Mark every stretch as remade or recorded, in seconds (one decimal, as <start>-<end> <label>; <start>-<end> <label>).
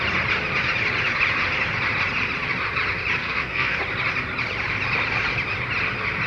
0.0-3.2 recorded; 3.2-3.8 remade; 3.8-6.3 recorded